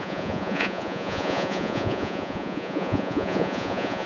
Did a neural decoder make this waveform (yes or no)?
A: yes